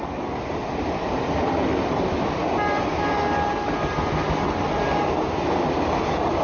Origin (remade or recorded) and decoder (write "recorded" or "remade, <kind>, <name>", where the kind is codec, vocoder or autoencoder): recorded